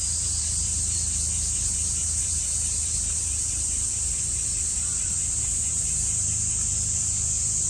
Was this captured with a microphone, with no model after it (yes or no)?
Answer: no